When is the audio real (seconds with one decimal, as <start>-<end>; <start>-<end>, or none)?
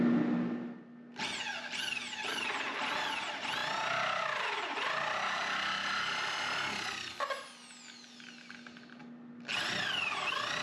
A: 0.0-10.6